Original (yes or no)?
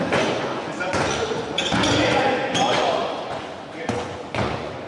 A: no